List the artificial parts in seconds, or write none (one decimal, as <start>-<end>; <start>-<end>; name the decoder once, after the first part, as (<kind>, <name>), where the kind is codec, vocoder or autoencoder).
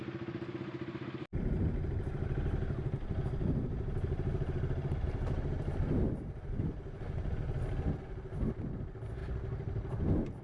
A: 2.6-7.4 (vocoder, BigVGAN v2)